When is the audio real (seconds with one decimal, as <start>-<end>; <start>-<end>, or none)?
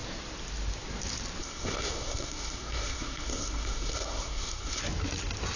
0.0-1.4; 4.8-5.6